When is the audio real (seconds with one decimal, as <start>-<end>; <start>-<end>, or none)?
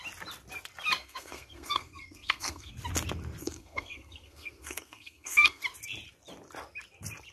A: 0.0-1.0; 2.7-3.4; 5.6-7.3